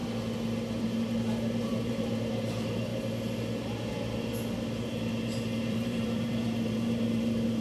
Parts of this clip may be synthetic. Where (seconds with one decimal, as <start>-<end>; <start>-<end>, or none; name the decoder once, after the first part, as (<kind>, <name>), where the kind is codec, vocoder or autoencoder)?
0.8-2.9 (vocoder, BigVGAN v2); 5.6-7.6